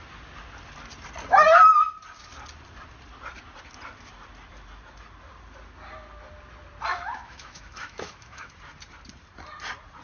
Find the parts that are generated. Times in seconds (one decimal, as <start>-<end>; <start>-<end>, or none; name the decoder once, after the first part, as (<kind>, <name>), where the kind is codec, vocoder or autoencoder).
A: 6.9-8.5 (autoencoder, DAC-VAE)